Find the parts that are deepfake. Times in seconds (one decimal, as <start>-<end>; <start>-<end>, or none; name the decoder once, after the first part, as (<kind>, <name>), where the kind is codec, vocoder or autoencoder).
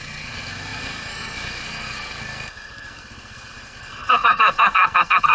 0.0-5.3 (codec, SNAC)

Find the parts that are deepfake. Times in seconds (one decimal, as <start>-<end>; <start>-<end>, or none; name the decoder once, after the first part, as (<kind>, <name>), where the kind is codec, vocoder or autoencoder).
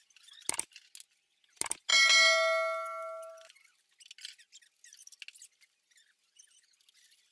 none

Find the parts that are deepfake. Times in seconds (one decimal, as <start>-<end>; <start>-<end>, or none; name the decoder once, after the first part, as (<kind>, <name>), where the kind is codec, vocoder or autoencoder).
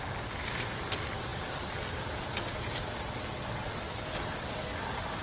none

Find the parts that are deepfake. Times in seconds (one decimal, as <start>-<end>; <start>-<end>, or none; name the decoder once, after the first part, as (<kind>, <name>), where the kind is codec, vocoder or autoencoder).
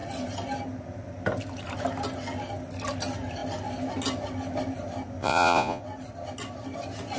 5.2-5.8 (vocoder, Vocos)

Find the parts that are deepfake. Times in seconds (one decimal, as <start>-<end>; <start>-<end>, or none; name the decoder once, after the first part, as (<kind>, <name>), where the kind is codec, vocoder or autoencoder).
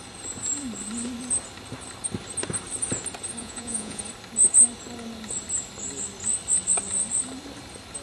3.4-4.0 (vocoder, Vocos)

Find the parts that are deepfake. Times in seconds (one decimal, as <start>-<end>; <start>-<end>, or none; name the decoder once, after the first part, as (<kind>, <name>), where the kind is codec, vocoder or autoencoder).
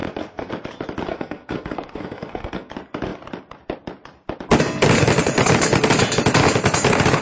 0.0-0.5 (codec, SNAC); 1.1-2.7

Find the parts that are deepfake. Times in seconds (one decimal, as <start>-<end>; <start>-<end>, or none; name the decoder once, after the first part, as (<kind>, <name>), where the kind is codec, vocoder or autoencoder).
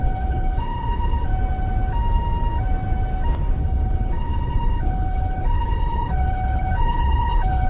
0.0-1.3 (codec, HILCodec); 3.6-7.7